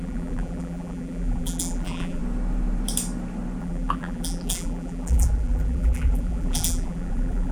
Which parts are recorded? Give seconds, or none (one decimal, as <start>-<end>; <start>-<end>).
2.2-3.6